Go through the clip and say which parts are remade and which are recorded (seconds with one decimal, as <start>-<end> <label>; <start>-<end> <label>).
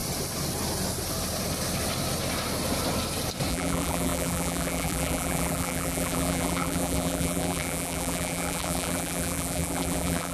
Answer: 0.0-3.5 recorded; 3.5-10.3 remade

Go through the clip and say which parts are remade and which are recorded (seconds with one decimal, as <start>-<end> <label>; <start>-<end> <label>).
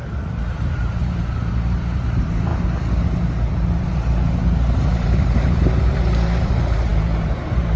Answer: 0.0-2.5 remade; 2.5-3.5 recorded; 3.5-7.8 remade